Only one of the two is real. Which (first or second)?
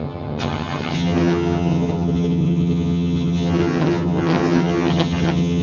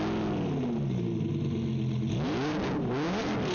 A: second